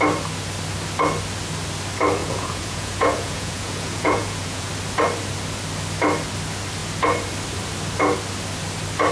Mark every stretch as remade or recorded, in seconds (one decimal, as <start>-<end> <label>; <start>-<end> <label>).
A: 0.0-2.2 recorded; 2.2-4.7 remade; 4.7-9.1 recorded